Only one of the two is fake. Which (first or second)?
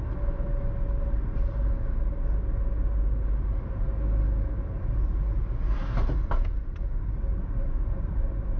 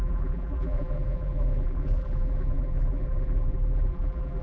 second